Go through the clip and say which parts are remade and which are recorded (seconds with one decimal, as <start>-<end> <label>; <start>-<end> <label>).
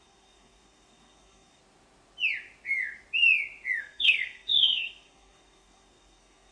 0.0-1.6 remade; 1.6-3.8 recorded; 3.8-6.5 remade